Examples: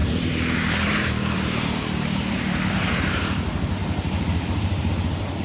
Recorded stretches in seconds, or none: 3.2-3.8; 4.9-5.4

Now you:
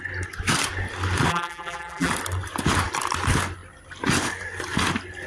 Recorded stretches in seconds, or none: 0.0-1.3; 2.1-5.3

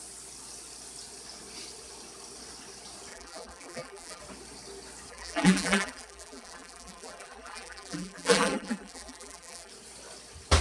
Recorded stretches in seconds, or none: 0.0-3.1; 4.2-5.1; 9.7-10.6

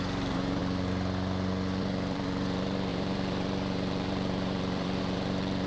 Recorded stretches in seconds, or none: 0.6-1.8

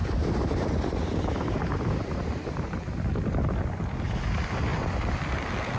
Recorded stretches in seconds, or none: 2.8-5.8

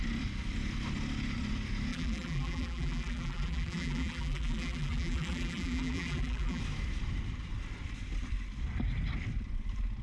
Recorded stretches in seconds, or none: 0.0-1.9; 6.6-10.0

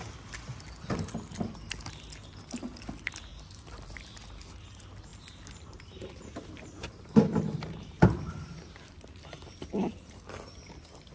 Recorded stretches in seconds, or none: 0.0-3.3; 4.0-5.1; 10.1-11.1